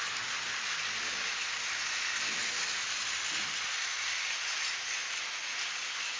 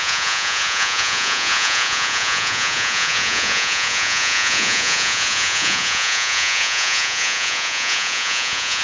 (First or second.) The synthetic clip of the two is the second